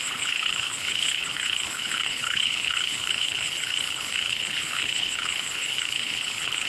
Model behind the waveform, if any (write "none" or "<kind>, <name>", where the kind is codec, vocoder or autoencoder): codec, HILCodec